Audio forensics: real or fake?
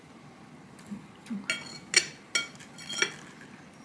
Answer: real